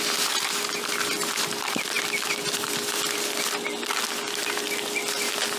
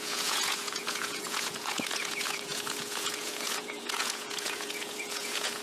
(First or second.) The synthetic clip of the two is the second